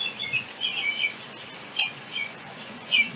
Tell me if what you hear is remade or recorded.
remade